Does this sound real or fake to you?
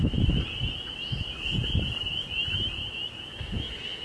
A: real